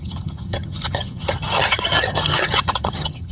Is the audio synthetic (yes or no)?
yes